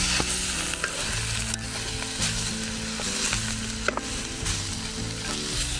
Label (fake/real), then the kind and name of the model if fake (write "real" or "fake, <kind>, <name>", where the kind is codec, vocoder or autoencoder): real